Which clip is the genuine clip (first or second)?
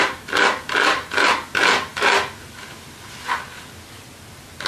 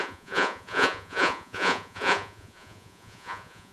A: first